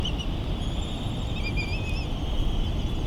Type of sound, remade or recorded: recorded